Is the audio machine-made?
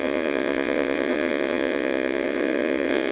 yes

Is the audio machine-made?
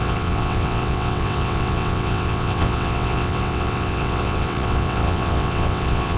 yes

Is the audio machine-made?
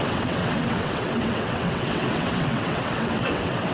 yes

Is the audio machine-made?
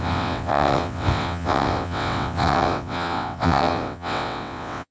yes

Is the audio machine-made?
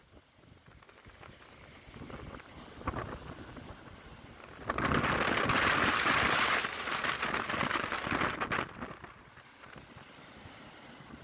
no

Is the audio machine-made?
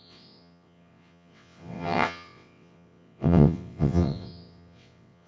yes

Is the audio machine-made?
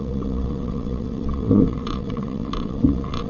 yes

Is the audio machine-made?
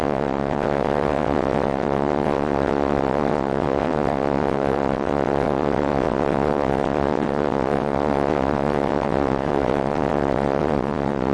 yes